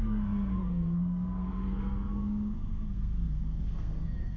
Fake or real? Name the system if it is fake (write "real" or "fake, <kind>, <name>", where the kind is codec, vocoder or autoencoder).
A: fake, codec, SNAC